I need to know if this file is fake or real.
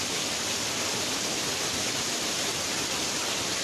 fake